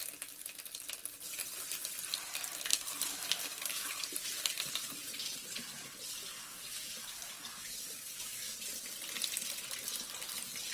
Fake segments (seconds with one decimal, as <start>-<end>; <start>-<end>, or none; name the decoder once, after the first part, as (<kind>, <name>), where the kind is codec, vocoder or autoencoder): 2.7-3.9 (codec, DAC); 6.5-8.6